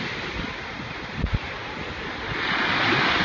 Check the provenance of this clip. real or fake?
real